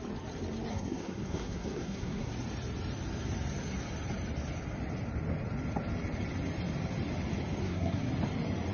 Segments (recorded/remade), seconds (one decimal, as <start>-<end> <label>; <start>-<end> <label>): 0.0-0.7 recorded; 0.7-2.3 remade; 2.3-7.6 recorded; 7.6-8.1 remade; 8.1-8.7 recorded